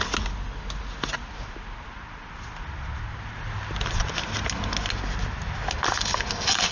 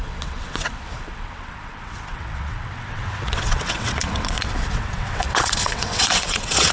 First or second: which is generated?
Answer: second